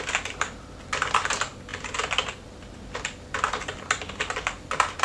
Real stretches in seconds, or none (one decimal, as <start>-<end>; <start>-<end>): 0.0-5.0